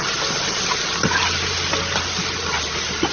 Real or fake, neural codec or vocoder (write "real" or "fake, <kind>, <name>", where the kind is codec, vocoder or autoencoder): real